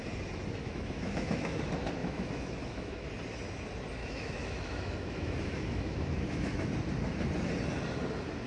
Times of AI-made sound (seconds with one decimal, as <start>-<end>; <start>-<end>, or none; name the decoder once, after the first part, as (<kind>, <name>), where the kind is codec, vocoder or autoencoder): 0.6-1.6 (autoencoder, DAC-VAE); 2.0-3.1; 4.0-6.7